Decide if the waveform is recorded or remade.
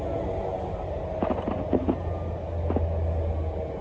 recorded